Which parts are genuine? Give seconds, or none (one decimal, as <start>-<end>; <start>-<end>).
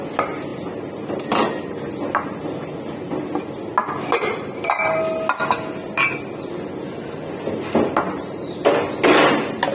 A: 0.0-0.5; 3.0-3.6; 5.0-9.7